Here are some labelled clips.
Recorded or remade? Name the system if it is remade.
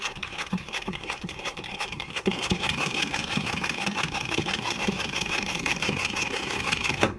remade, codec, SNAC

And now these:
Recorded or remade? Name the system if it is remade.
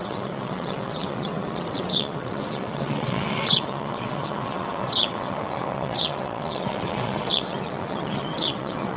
remade, vocoder, WaveNeXt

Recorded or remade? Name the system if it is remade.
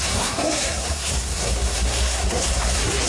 remade, codec, SNAC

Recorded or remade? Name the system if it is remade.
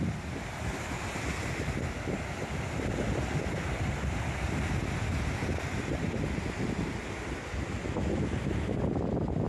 recorded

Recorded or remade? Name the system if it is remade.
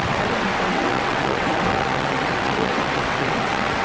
remade, vocoder, WaveNeXt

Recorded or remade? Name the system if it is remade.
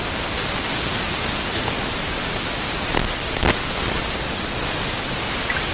recorded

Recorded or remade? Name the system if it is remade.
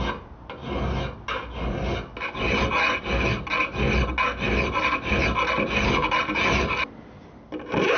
recorded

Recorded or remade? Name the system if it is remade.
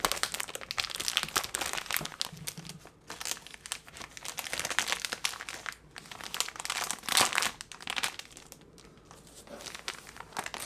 recorded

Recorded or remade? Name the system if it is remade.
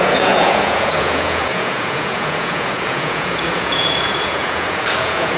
remade, vocoder, Vocos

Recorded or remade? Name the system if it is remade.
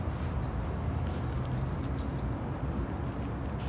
recorded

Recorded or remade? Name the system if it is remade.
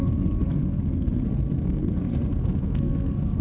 remade, codec, SNAC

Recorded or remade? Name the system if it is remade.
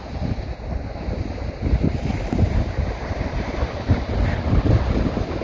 recorded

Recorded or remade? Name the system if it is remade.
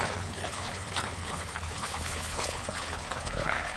remade, codec, HILCodec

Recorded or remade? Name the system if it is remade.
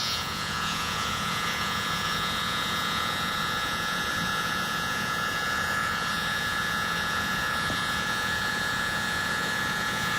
remade, vocoder, Vocos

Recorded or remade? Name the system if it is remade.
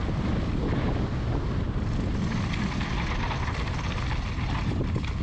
recorded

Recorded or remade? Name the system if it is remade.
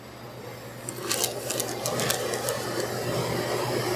recorded